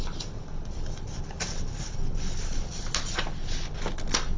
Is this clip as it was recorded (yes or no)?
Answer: yes